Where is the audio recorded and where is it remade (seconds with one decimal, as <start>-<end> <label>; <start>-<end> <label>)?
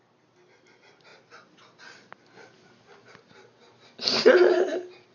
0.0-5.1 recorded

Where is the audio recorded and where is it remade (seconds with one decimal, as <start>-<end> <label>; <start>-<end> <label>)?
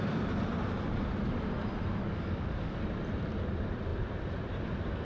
0.0-2.0 recorded; 2.0-2.8 remade; 2.8-5.0 recorded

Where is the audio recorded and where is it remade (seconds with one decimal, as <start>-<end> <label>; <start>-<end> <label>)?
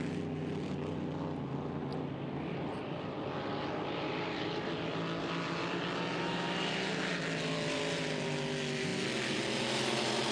0.0-10.3 recorded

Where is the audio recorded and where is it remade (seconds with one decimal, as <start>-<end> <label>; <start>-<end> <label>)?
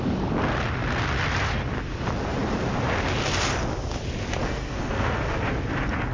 0.0-4.4 recorded; 4.4-5.4 remade; 5.4-6.1 recorded